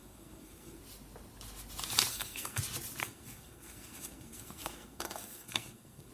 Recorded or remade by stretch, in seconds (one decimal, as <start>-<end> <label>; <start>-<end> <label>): 0.0-0.8 remade; 0.8-2.1 recorded; 2.1-2.6 remade; 2.6-3.0 recorded; 3.0-6.1 remade